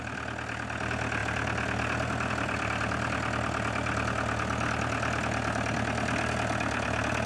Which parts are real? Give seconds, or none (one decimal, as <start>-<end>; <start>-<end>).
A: 0.0-7.3